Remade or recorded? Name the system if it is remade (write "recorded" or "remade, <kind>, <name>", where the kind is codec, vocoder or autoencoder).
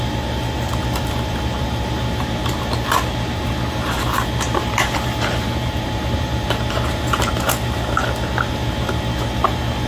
remade, vocoder, BigVGAN v2